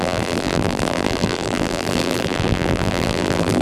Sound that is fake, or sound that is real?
fake